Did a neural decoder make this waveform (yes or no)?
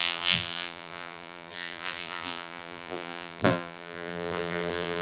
yes